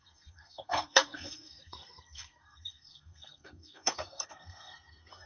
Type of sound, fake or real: fake